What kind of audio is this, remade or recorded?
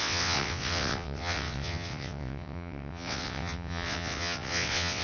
remade